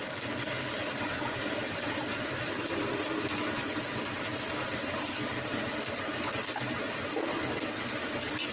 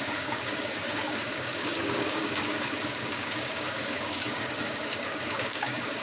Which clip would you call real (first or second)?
first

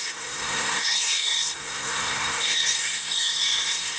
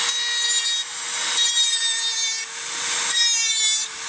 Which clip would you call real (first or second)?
second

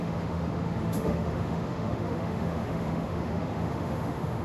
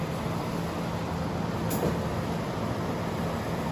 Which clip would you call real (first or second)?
second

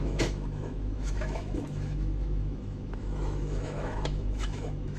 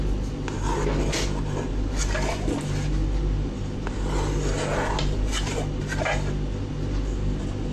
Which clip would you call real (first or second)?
second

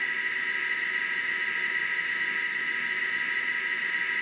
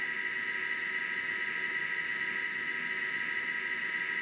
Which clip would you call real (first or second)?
second